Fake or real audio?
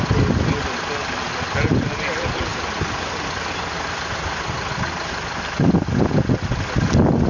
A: real